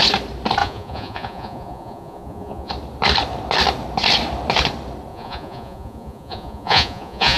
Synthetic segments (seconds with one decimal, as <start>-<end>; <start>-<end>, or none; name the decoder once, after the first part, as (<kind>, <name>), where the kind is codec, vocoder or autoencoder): 0.6-2.7 (vocoder, Vocos); 5.1-7.4